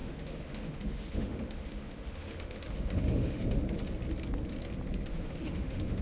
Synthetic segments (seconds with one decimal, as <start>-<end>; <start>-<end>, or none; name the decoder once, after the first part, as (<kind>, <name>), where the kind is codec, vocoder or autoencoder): 0.0-3.6 (autoencoder, DAC-VAE); 5.1-6.0